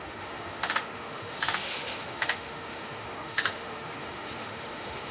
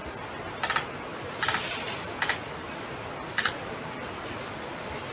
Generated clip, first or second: first